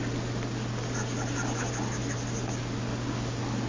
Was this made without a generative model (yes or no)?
yes